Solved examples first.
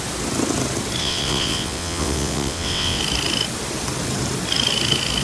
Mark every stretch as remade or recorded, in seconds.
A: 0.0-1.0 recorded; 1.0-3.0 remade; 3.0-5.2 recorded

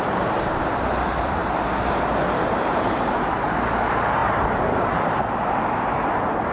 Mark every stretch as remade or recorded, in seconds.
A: 0.0-6.5 remade

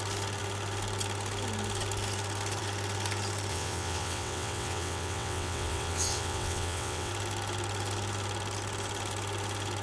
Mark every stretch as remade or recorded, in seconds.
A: 0.0-3.5 recorded; 3.5-7.1 remade; 7.1-9.8 recorded

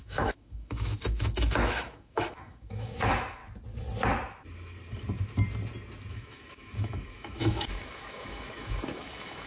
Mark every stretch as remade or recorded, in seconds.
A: 0.0-3.4 remade; 3.4-6.1 recorded; 6.1-9.5 remade

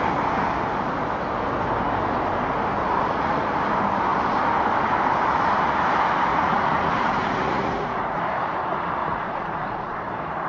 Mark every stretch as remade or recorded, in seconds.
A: 0.0-2.8 recorded; 2.8-3.6 remade; 3.6-6.3 recorded; 6.3-8.2 remade; 8.2-9.0 recorded; 9.0-10.0 remade; 10.0-10.5 recorded

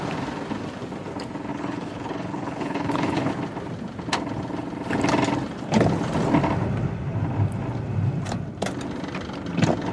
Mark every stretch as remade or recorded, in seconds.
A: 0.0-1.5 recorded; 1.5-3.3 remade; 3.3-9.9 recorded